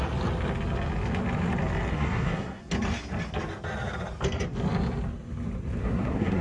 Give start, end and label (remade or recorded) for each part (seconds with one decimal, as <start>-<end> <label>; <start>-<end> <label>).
0.0-1.9 recorded; 1.9-2.6 remade; 2.6-5.8 recorded; 5.8-6.4 remade